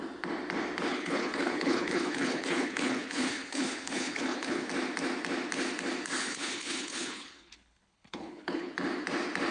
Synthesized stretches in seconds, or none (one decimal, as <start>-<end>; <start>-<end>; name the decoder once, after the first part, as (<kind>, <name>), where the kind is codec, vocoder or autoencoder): 0.9-4.7 (codec, HILCodec); 6.2-8.7